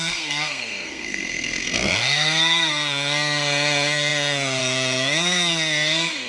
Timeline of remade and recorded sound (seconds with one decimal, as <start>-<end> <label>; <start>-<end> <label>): 0.0-6.3 remade